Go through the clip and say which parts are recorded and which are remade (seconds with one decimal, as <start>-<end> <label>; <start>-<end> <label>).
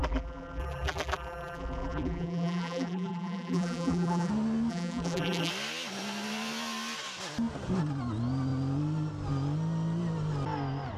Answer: 0.0-4.3 remade; 4.3-4.7 recorded; 4.7-5.5 remade; 5.5-11.0 recorded